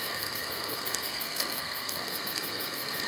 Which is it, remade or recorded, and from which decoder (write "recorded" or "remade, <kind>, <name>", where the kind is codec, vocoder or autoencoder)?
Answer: remade, codec, SNAC